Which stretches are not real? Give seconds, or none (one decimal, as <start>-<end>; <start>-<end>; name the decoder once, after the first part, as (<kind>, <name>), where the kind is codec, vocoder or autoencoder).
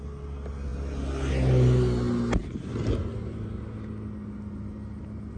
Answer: none